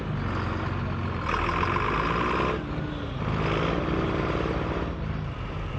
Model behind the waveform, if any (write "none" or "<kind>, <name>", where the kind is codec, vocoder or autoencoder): none